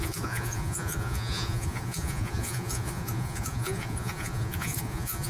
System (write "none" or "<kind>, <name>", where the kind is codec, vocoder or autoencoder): vocoder, Vocos